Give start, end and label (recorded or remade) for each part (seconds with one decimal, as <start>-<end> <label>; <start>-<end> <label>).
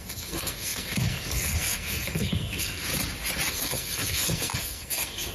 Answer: 0.0-2.9 remade; 2.9-3.5 recorded; 3.5-5.3 remade